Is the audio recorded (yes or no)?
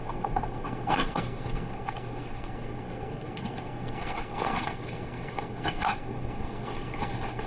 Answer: no